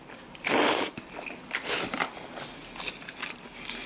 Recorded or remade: recorded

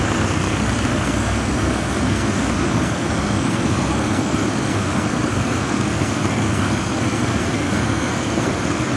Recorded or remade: remade